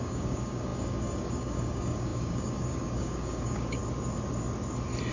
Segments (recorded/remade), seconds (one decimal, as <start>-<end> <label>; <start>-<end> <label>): 0.0-3.8 remade; 3.8-5.1 recorded